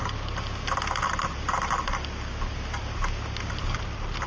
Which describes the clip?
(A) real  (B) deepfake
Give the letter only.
A